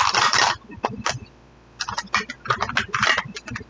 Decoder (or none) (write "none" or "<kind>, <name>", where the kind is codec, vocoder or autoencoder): none